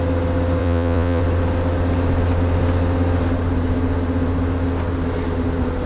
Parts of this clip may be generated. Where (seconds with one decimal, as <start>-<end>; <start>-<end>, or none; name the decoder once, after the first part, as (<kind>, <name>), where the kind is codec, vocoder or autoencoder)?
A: 0.6-1.2 (vocoder, Vocos)